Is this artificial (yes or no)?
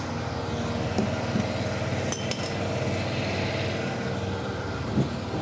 no